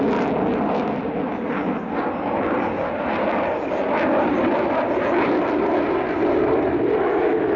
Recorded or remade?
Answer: recorded